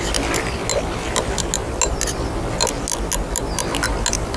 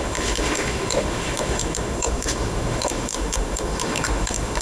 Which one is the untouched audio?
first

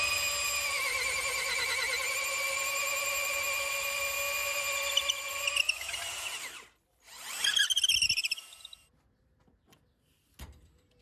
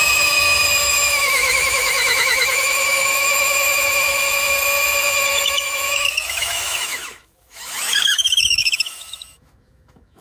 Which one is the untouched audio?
first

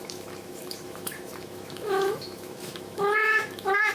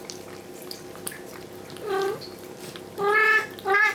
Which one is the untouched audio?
second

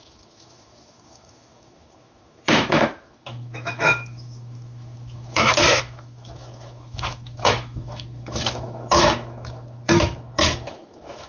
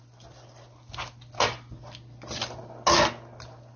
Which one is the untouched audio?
second